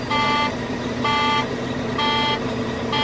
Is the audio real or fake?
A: fake